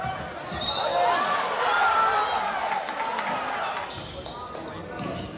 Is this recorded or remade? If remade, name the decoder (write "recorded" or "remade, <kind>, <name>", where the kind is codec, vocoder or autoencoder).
recorded